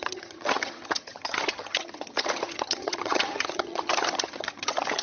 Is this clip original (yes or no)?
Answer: no